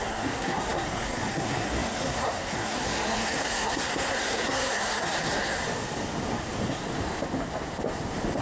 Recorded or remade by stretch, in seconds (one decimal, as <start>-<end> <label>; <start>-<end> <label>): 0.0-5.6 remade; 5.6-8.4 recorded